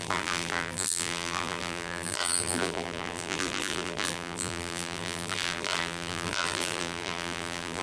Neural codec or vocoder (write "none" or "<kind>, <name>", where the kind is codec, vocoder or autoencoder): vocoder, BigVGAN v2